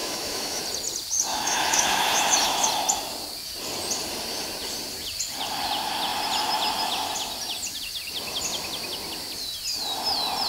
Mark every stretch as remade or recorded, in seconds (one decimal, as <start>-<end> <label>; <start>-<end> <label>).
0.0-0.6 remade; 0.6-1.3 recorded; 1.3-2.7 remade; 2.7-10.5 recorded